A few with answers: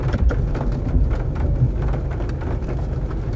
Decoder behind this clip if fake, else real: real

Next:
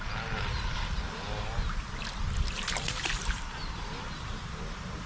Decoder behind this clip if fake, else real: real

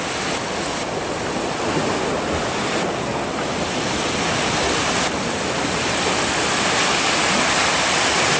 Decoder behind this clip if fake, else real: real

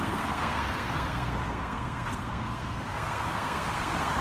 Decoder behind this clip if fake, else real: fake, codec, SNAC